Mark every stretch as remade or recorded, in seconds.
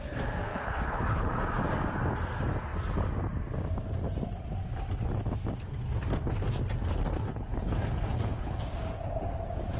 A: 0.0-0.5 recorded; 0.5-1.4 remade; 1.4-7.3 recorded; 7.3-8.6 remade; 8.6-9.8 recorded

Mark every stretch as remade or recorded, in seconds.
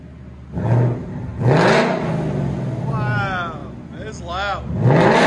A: 0.0-5.3 recorded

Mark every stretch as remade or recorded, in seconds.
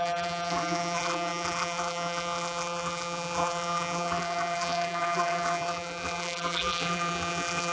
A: 0.0-7.7 remade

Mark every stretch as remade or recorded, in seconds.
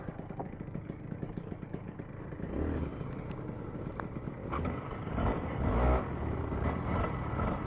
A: 0.0-0.4 recorded; 0.4-2.0 remade; 2.0-4.4 recorded; 4.4-5.1 remade; 5.1-7.7 recorded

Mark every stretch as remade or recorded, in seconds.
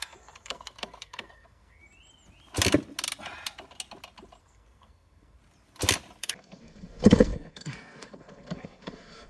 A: 0.0-1.8 remade; 1.8-4.4 recorded; 4.4-5.4 remade; 5.4-6.2 recorded; 6.2-9.3 remade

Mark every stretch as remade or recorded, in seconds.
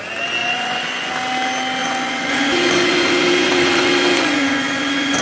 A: 0.0-0.4 recorded; 0.4-1.1 remade; 1.1-1.8 recorded; 1.8-5.2 remade